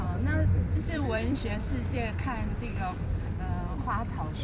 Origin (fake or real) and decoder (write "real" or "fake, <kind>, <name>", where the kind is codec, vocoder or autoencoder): fake, vocoder, BigVGAN v2